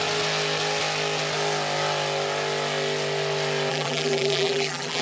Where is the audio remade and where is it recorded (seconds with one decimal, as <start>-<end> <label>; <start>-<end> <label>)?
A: 0.0-3.7 recorded; 3.7-5.0 remade